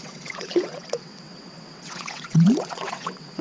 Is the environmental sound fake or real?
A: fake